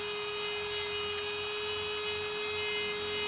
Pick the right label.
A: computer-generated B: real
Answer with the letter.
B